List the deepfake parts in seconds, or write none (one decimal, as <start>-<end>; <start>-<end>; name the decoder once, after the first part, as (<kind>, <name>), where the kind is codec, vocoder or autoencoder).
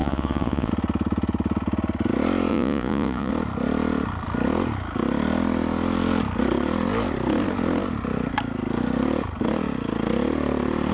0.0-0.7 (vocoder, Vocos); 2.5-3.3